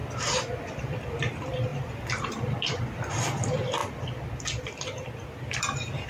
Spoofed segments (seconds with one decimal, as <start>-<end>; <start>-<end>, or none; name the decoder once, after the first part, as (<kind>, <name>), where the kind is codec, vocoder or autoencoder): 0.0-3.8 (vocoder, BigVGAN v2); 5.6-6.1